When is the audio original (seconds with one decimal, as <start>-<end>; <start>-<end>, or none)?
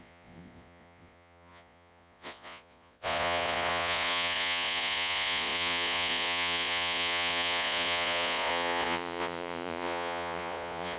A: none